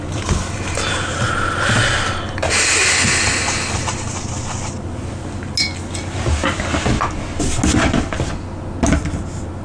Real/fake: real